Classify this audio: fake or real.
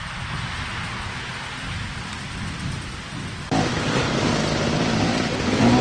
real